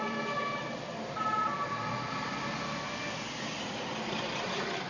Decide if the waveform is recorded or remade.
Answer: recorded